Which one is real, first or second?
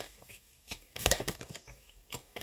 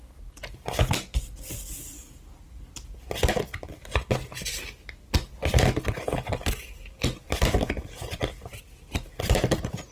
second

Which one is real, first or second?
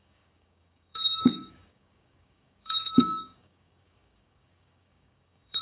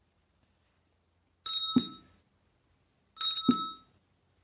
second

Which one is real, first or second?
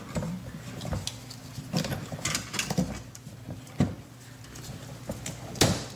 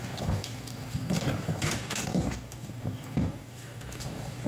first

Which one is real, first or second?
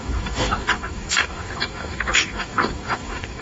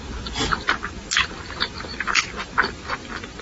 second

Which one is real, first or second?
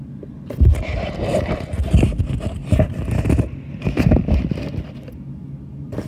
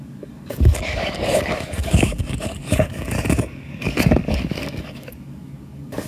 first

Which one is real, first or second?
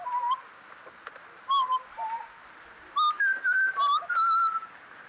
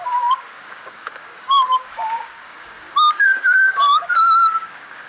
first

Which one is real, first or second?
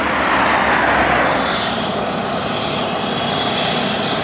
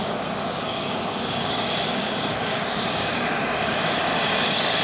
first